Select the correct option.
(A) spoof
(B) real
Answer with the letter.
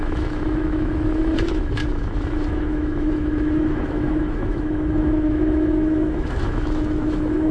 A